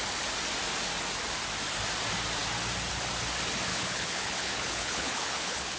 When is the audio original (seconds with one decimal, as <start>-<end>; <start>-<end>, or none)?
0.0-3.7